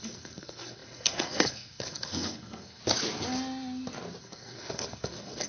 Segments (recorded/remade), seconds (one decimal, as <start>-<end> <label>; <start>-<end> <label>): 0.0-2.8 remade; 2.8-4.2 recorded; 4.2-5.5 remade